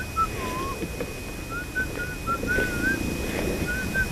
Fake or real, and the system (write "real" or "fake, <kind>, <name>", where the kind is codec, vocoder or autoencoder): real